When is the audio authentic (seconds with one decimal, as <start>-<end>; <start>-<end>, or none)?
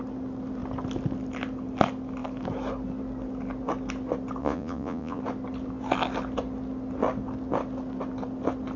0.0-4.4; 5.2-8.8